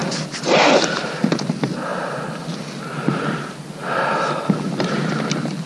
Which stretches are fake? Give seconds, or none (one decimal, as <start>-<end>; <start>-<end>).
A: 1.9-2.8; 3.8-4.4